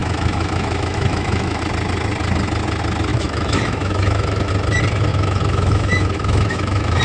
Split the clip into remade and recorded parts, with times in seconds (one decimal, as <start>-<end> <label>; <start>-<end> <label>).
0.0-1.6 remade; 1.6-3.1 recorded; 3.1-4.5 remade; 4.5-5.1 recorded; 5.1-7.0 remade

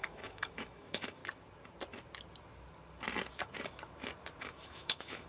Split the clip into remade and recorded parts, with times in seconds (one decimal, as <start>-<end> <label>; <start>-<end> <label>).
0.0-1.2 remade; 1.2-4.4 recorded; 4.4-5.3 remade

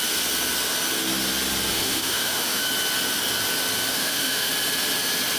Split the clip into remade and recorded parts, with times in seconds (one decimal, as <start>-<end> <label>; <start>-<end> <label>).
0.0-1.7 recorded; 1.7-2.7 remade; 2.7-3.9 recorded; 3.9-4.5 remade; 4.5-5.4 recorded

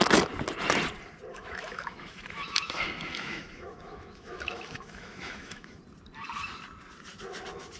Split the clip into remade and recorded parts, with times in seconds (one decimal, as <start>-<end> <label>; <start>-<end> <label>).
0.0-1.3 recorded; 1.3-5.8 remade; 5.8-7.8 recorded

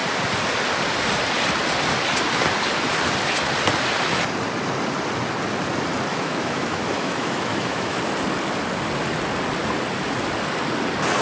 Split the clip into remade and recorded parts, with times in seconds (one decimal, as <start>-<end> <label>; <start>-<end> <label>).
0.0-6.1 recorded; 6.1-8.0 remade; 8.0-11.2 recorded